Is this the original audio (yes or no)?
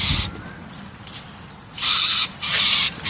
no